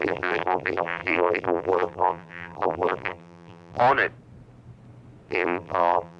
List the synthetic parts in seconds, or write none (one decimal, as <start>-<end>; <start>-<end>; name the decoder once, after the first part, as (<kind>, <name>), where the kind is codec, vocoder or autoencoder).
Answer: 0.0-3.8 (vocoder, BigVGAN v2); 5.3-6.2